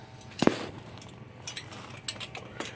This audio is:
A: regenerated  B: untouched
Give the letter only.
B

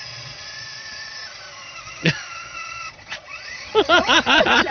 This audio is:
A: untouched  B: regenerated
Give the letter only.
B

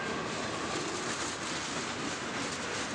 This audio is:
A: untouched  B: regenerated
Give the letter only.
A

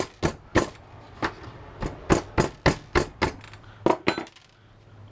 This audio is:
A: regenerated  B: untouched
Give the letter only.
B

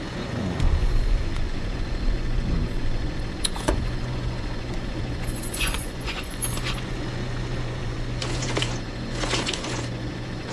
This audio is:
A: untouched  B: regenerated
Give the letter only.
B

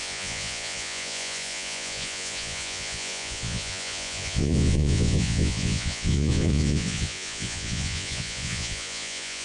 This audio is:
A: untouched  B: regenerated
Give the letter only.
B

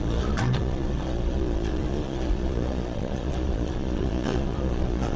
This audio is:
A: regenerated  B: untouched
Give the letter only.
A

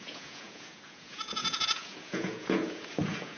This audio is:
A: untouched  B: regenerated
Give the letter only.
B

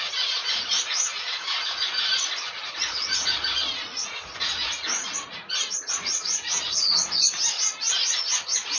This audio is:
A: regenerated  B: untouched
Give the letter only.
A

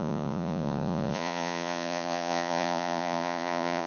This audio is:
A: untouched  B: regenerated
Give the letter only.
B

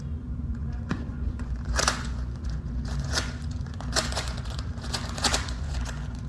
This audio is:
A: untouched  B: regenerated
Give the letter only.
B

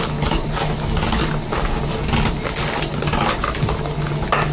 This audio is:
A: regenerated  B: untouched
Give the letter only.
B